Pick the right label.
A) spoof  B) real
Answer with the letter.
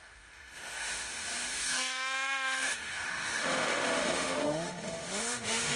A